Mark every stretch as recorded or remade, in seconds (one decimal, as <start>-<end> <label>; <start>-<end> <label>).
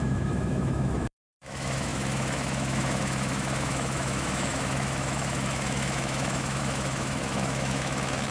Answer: 0.0-8.3 remade